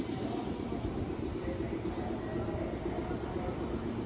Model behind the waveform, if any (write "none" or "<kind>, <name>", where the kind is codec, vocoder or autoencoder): none